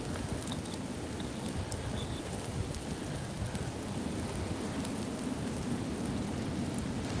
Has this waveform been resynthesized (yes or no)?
no